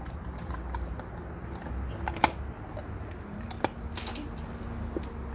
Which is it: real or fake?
real